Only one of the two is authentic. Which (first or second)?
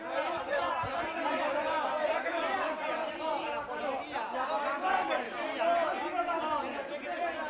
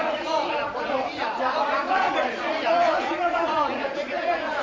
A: first